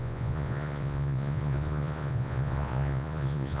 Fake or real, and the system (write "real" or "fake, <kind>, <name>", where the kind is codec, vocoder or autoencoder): fake, vocoder, Vocos